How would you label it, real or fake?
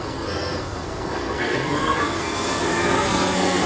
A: fake